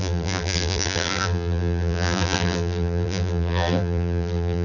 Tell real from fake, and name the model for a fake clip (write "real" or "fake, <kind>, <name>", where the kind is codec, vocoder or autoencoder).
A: fake, vocoder, BigVGAN v2